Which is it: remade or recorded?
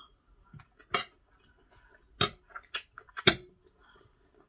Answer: recorded